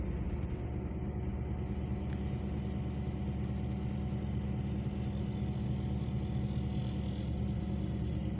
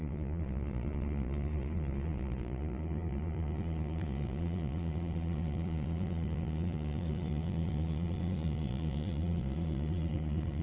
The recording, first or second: first